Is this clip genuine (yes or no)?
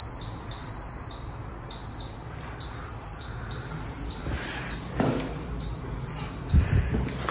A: yes